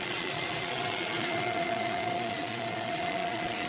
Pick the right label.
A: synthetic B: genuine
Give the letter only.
A